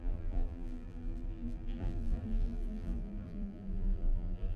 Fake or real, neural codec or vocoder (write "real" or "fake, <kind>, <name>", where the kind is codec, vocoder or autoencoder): fake, vocoder, BigVGAN v2